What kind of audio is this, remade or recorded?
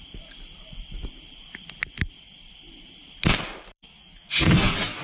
recorded